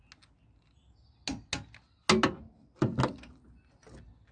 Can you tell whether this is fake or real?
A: real